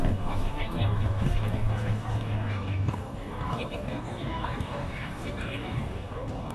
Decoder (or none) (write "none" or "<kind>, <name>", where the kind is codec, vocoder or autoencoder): codec, DAC